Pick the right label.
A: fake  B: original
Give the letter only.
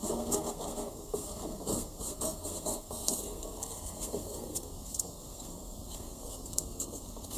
A